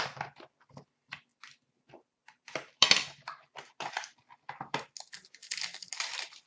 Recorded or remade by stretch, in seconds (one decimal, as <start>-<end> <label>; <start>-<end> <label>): 0.0-6.5 recorded